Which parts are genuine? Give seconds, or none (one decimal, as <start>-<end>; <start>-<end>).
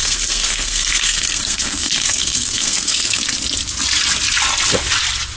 3.2-5.4